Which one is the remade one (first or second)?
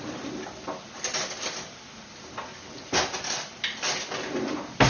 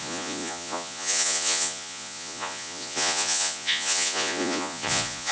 second